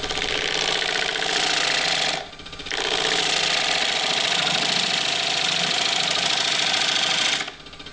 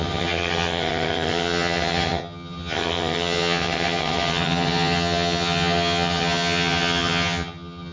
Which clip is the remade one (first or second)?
second